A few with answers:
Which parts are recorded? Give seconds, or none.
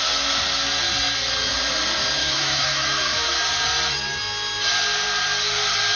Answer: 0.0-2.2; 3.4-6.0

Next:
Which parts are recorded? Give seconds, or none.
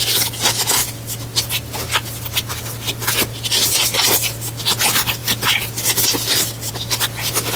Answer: 0.0-7.6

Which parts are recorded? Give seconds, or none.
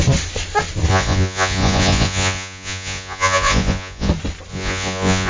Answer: 0.0-0.9; 4.1-4.5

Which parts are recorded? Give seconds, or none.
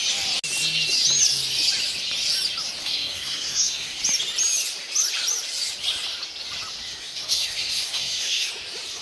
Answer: 0.0-2.8; 4.0-6.9; 8.5-9.0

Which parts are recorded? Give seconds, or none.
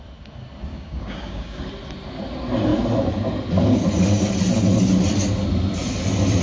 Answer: 0.0-0.7; 1.6-6.4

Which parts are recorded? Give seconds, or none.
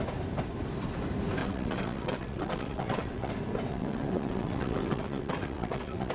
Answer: 0.0-1.4; 3.3-3.7